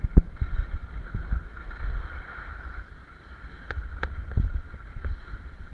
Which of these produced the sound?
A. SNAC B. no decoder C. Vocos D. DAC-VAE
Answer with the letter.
B